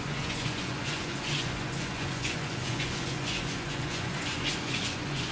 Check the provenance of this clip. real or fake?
fake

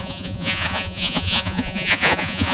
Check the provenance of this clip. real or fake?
fake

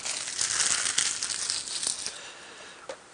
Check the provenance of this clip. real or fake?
real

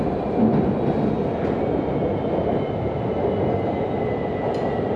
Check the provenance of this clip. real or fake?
real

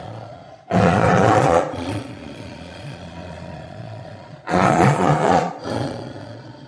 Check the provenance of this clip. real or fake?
fake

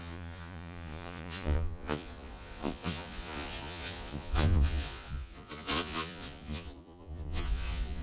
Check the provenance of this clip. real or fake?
fake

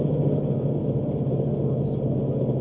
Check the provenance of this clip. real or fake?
real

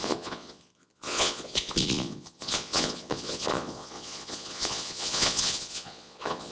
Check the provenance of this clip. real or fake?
fake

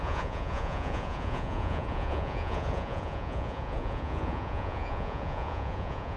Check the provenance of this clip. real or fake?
fake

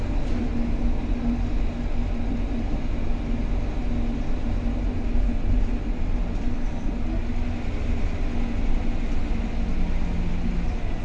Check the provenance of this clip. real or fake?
real